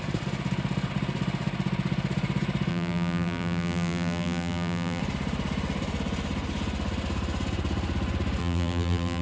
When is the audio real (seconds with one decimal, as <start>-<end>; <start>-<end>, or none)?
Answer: 0.0-2.7; 5.0-8.4

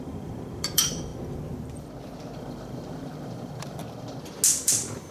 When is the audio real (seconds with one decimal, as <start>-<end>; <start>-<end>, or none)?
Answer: 1.1-2.4; 3.8-4.6

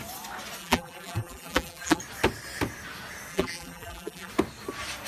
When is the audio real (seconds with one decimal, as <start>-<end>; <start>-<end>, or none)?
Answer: 0.0-0.6; 2.0-3.3; 4.3-5.1

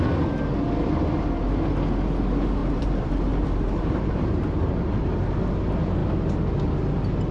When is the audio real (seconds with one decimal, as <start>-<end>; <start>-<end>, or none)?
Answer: 0.0-2.6; 5.3-7.3

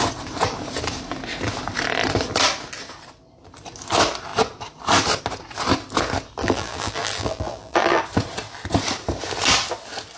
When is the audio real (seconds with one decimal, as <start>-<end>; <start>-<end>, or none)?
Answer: 0.0-6.4; 8.0-10.2

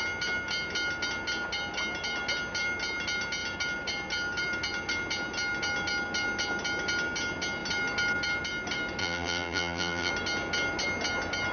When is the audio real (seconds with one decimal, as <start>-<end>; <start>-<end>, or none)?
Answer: 0.0-9.0; 10.1-11.5

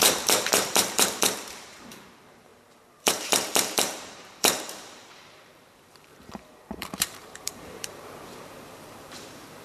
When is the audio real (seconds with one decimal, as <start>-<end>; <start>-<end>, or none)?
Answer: none

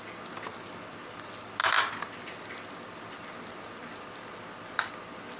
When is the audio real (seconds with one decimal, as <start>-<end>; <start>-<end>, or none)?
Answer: 0.0-1.6; 3.5-5.4